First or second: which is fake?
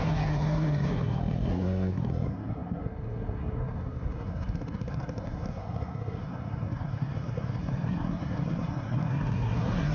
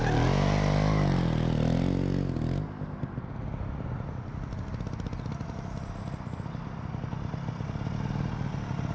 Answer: first